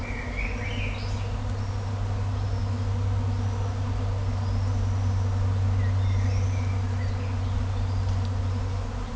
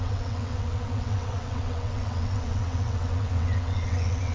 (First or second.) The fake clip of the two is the second